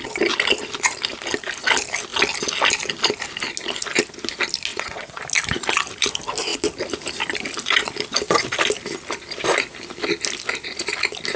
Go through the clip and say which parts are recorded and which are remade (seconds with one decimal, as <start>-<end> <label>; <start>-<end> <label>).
0.0-4.7 recorded; 4.7-5.2 remade; 5.2-11.4 recorded

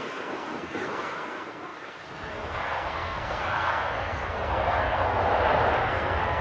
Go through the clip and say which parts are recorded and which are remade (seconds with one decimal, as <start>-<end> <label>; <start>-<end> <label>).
0.0-5.2 remade; 5.2-5.8 recorded; 5.8-6.4 remade

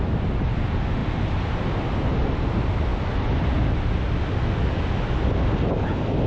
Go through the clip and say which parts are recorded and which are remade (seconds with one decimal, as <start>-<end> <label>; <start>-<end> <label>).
0.0-6.3 recorded

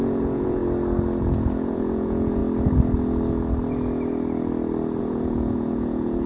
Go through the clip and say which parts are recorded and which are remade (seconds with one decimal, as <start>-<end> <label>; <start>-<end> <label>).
0.0-0.6 remade; 0.6-1.2 recorded; 1.2-2.4 remade; 2.4-5.0 recorded; 5.0-6.3 remade